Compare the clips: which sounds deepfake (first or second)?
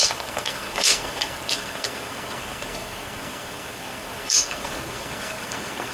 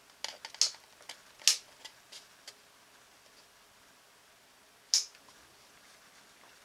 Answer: first